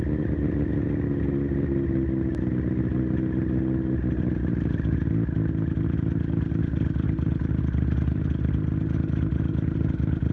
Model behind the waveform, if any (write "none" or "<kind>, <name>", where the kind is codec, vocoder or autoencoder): none